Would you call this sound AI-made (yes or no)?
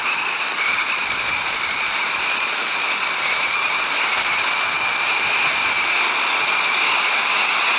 no